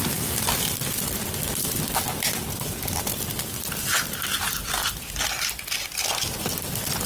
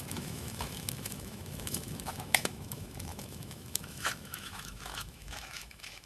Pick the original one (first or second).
first